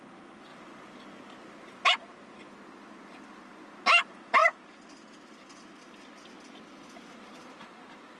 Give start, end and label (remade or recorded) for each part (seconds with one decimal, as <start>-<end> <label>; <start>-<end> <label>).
0.0-8.2 recorded